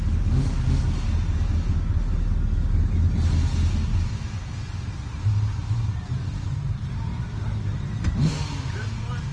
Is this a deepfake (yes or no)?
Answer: no